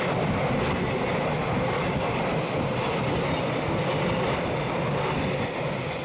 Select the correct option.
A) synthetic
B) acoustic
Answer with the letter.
B